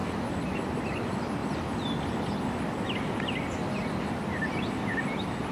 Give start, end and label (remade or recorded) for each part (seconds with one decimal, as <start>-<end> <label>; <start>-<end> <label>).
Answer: 0.0-5.5 recorded